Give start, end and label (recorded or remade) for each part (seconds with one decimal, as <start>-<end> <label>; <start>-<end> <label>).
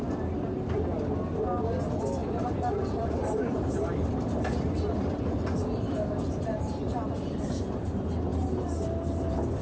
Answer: 0.0-2.2 recorded; 2.2-3.9 remade; 3.9-6.5 recorded; 6.5-7.4 remade; 7.4-9.6 recorded